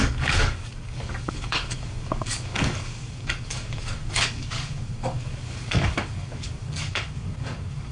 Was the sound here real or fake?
fake